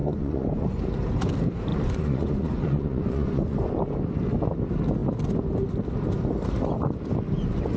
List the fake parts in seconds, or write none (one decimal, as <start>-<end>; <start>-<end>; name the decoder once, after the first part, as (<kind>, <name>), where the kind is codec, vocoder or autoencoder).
0.0-0.8 (vocoder, Vocos); 1.7-3.7